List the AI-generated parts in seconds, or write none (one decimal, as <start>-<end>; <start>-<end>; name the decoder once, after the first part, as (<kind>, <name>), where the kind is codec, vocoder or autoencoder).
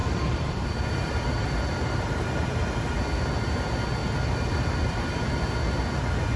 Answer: 0.0-2.8 (vocoder, BigVGAN v2); 4.0-5.3